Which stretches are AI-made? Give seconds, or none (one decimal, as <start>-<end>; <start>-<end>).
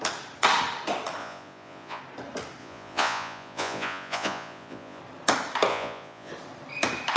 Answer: 1.2-2.0; 2.6-5.0; 5.7-6.3